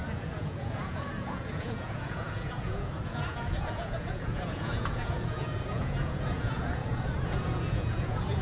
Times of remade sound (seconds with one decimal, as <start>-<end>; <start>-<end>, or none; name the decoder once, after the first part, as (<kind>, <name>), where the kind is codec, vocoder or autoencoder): 0.0-8.4 (vocoder, Vocos)